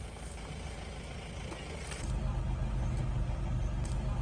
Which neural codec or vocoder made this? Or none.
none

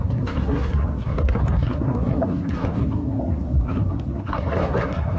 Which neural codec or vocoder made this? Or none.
codec, SNAC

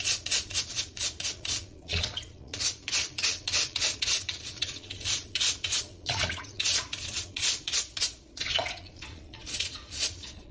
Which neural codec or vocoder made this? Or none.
vocoder, Vocos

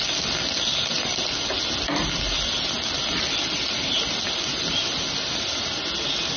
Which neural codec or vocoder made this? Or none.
none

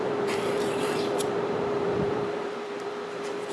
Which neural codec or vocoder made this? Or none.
vocoder, BigVGAN v2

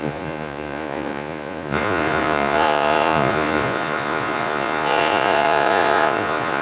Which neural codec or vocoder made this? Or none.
vocoder, Vocos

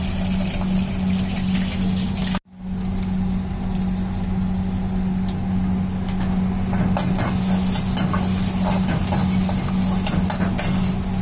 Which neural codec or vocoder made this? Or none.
none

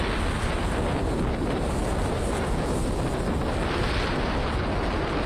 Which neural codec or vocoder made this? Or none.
none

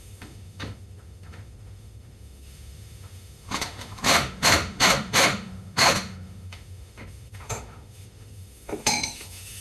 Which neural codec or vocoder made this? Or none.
autoencoder, DAC-VAE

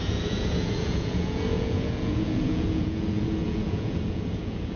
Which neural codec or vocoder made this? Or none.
vocoder, Vocos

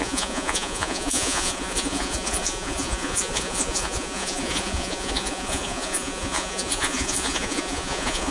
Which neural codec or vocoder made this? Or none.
vocoder, Vocos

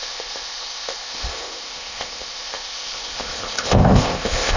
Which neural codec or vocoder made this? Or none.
codec, ZipCodec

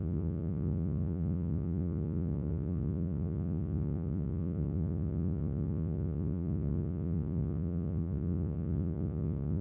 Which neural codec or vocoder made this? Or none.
vocoder, Vocos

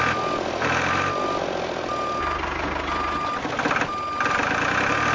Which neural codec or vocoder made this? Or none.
none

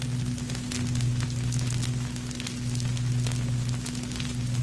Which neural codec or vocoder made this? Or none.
none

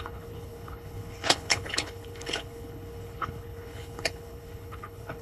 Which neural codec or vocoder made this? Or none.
codec, HILCodec